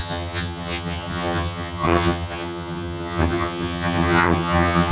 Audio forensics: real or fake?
fake